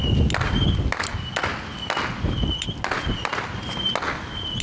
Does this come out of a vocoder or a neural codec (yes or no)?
no